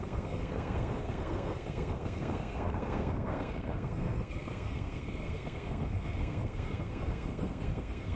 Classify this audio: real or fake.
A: fake